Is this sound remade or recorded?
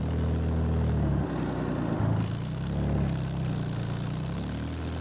recorded